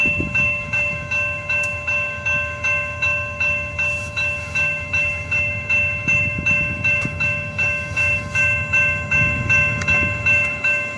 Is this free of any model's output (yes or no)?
no